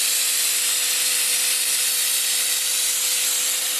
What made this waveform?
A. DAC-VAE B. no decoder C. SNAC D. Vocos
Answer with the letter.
B